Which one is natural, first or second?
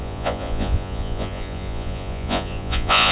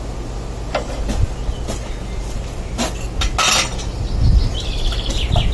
second